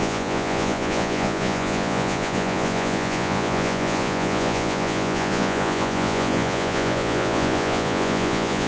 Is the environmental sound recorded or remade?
remade